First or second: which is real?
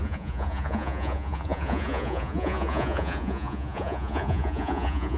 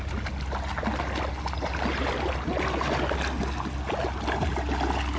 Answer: second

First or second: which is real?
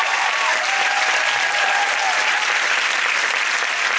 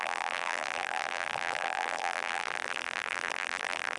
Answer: first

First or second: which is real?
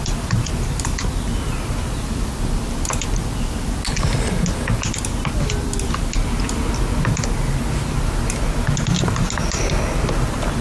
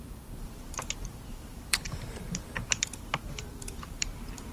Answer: first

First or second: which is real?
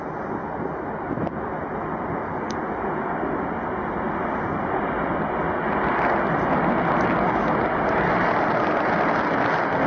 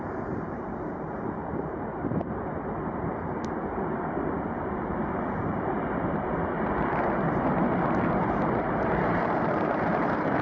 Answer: first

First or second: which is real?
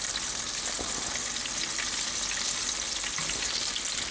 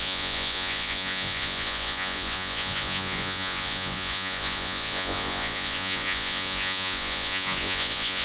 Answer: first